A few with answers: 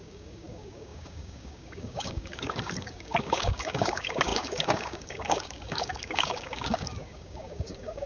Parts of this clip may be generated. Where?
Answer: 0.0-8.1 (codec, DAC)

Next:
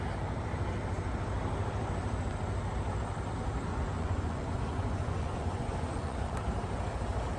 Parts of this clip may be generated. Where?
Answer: 3.7-6.4 (vocoder, Vocos)

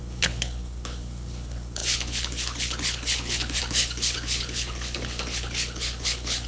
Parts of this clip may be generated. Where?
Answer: 0.0-6.5 (codec, HILCodec)

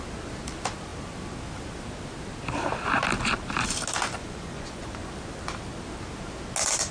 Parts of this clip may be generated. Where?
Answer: 4.2-5.1 (vocoder, Vocos)

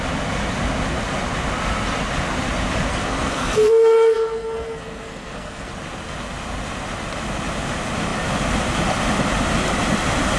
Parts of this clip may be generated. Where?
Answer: 2.9-5.7 (codec, SNAC)

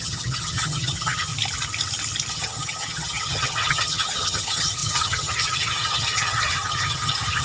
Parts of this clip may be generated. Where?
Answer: 0.0-1.3 (vocoder, HiFi-GAN); 2.3-7.4

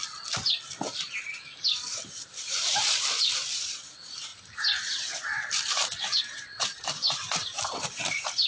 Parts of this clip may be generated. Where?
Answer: 1.0-8.5 (vocoder, BigVGAN v2)

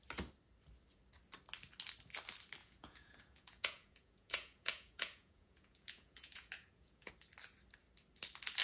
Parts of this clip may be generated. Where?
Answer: 2.6-7.1 (vocoder, Vocos)